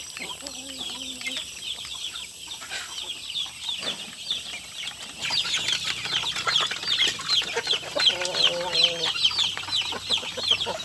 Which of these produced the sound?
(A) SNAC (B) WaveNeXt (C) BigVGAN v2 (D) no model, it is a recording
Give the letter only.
D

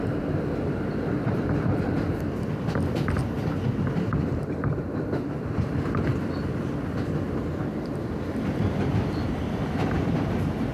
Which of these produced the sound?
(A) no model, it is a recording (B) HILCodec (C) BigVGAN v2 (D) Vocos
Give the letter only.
C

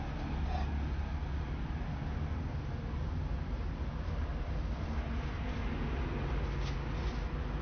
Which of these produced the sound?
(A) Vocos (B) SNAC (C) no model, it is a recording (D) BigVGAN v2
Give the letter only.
C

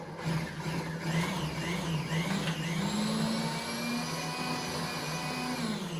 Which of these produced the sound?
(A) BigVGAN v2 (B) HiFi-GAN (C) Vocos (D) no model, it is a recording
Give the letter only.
D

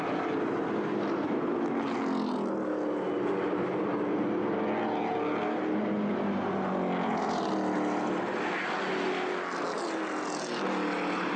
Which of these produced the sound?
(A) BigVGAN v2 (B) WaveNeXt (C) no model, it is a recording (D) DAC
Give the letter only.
C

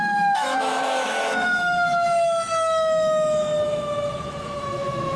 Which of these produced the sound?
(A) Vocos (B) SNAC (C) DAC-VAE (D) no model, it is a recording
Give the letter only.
C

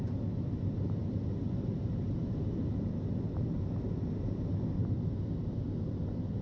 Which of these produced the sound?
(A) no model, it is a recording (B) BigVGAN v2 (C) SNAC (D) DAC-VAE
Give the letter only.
A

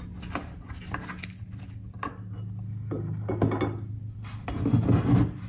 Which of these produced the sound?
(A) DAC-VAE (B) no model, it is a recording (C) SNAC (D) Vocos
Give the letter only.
B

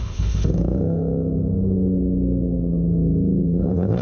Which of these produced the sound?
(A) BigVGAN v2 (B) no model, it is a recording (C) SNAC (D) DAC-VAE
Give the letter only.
D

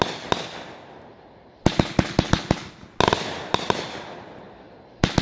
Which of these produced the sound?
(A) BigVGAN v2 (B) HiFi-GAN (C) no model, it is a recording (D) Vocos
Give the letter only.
C